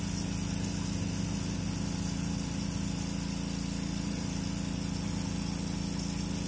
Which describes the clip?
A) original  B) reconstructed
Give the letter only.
A